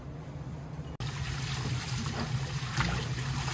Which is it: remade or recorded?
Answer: recorded